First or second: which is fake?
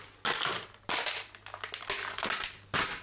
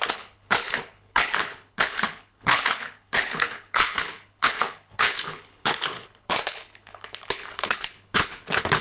second